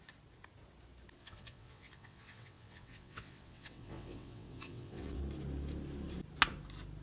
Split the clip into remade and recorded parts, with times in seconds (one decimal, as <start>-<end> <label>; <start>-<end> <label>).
0.0-1.2 recorded; 1.2-5.2 remade; 5.2-7.0 recorded